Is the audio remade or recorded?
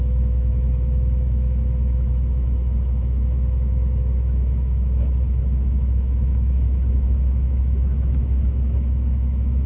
remade